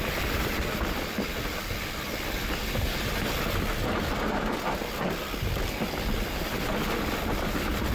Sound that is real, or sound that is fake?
real